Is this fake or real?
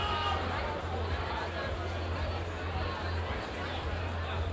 real